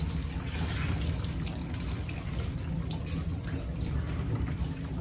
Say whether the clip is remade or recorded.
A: recorded